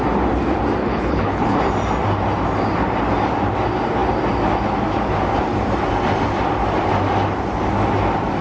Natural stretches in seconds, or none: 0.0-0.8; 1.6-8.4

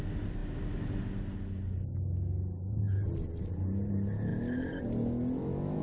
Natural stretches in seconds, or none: 0.0-5.8

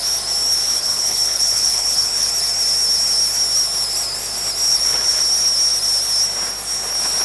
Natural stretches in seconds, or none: 0.0-0.7; 2.3-4.7; 5.2-7.2

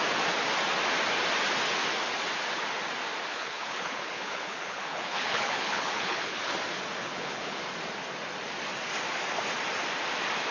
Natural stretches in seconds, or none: 0.0-3.3; 6.5-7.0; 7.6-10.5

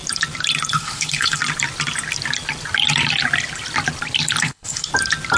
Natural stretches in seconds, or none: 0.0-0.7; 1.4-4.4; 4.9-5.4

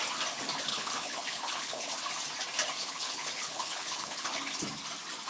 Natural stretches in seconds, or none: 0.0-0.7; 1.9-2.8; 4.4-5.3

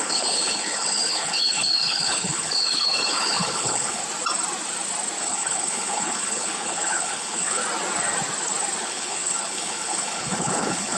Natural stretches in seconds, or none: 4.0-5.2; 7.6-8.8